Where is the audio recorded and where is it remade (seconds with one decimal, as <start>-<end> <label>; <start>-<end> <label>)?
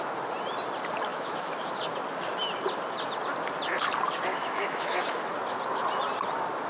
0.0-1.1 recorded; 1.1-1.7 remade; 1.7-4.3 recorded; 4.3-5.2 remade; 5.2-6.7 recorded